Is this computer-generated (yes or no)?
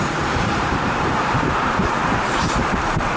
yes